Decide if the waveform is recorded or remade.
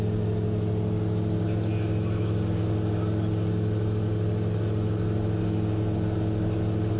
recorded